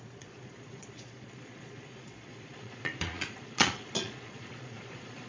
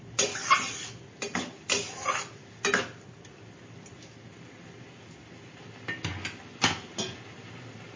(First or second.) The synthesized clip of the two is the first